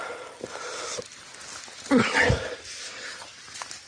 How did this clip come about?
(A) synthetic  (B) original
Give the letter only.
B